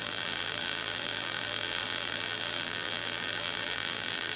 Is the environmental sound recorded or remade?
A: remade